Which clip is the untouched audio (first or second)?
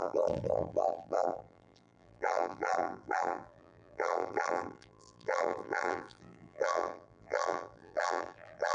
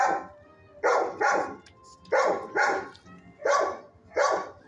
second